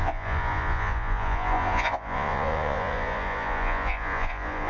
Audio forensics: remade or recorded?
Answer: remade